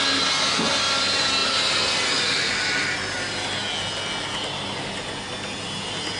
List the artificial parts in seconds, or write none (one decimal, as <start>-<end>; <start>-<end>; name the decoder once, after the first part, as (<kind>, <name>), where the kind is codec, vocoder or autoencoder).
none